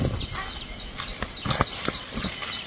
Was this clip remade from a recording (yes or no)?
no